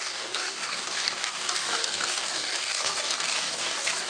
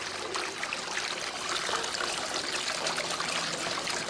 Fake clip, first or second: first